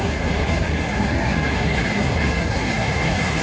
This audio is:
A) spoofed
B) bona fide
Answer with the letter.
A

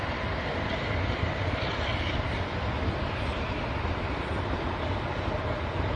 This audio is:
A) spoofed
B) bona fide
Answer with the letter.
B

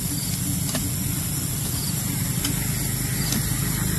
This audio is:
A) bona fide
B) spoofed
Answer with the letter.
A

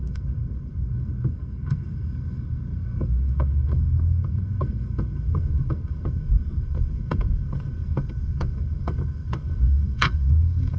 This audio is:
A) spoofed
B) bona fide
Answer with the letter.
A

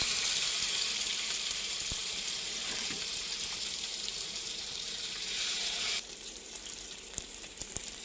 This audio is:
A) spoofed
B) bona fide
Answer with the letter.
A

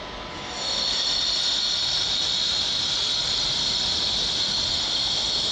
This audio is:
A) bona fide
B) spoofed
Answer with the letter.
A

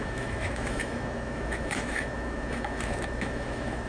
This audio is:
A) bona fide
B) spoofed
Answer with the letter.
B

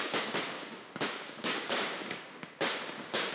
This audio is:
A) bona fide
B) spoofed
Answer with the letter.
B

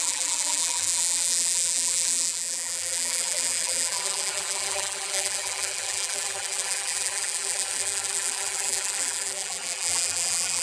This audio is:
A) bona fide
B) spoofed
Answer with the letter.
B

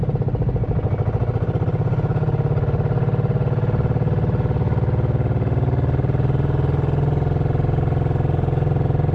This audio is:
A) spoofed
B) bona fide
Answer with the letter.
B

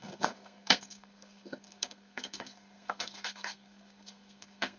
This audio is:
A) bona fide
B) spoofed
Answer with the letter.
B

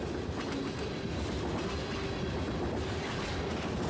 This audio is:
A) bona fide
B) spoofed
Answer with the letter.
A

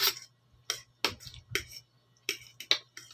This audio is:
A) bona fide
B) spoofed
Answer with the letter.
A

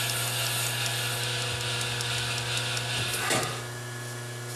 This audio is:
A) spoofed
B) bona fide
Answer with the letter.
B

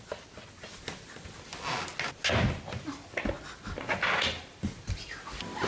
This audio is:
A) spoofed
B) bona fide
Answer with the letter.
B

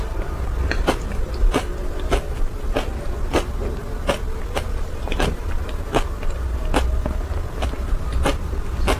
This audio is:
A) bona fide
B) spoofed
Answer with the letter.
A